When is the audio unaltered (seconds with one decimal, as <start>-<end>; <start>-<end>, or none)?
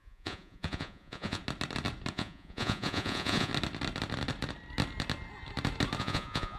1.4-2.1; 3.5-6.0